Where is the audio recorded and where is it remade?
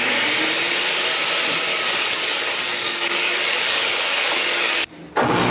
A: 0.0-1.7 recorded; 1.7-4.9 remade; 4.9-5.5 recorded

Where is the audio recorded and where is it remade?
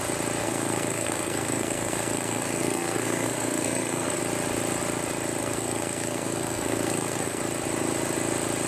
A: 0.0-0.4 recorded; 0.4-4.2 remade; 4.2-5.4 recorded; 5.4-7.4 remade; 7.4-8.7 recorded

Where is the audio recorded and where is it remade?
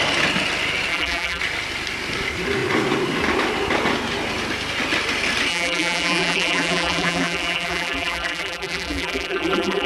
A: 0.0-0.9 recorded; 0.9-1.4 remade; 1.4-5.5 recorded; 5.5-9.9 remade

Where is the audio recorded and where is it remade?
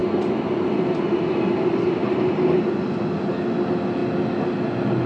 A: 0.0-5.1 recorded